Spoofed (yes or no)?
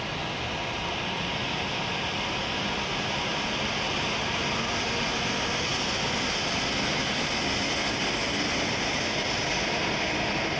no